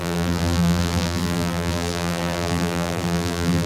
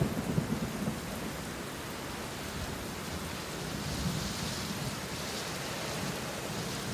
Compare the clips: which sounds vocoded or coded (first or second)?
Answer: first